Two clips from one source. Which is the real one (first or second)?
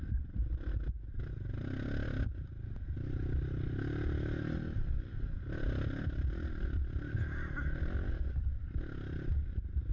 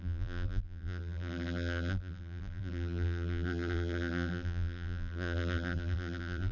first